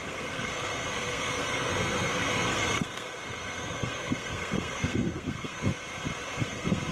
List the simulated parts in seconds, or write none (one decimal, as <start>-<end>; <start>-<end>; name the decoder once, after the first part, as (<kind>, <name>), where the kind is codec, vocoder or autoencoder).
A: 0.0-5.7 (codec, SNAC); 6.4-6.9